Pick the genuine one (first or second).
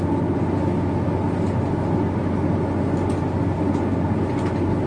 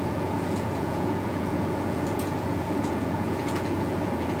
first